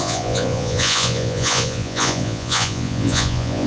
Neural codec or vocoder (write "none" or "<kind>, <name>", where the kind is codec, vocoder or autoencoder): vocoder, Vocos